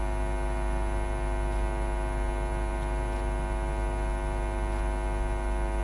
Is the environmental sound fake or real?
real